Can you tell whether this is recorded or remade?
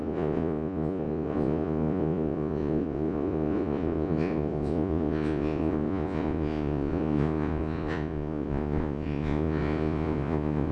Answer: remade